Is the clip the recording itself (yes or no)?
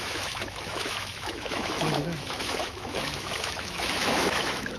no